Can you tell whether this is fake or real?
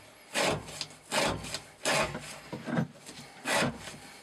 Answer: real